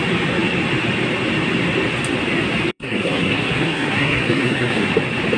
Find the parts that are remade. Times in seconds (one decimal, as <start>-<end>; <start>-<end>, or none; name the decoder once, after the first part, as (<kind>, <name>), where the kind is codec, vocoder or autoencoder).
2.7-4.9 (codec, SNAC)